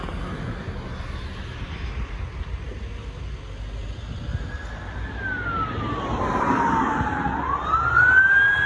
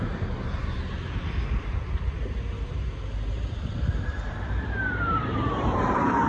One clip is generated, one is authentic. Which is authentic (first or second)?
first